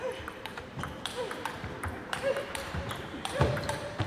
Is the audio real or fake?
fake